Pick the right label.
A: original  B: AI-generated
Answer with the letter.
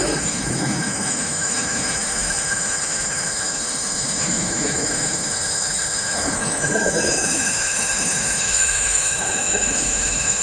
B